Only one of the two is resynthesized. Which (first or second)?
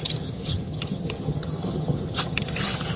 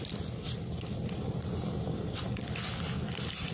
first